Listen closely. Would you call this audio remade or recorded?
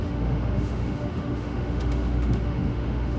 remade